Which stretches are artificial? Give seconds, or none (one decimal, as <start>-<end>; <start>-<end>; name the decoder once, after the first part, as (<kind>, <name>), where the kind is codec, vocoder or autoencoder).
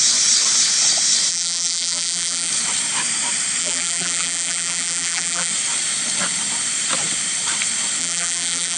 1.3-2.5 (vocoder, BigVGAN v2); 3.6-5.5; 8.0-8.8